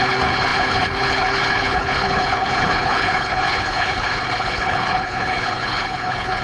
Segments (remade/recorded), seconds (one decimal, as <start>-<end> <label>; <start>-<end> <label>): 0.0-6.4 remade